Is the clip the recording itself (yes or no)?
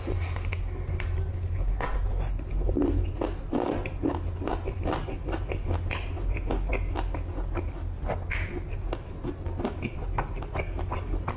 yes